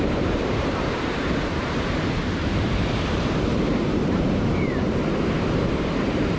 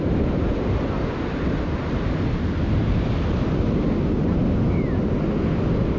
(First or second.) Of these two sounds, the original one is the second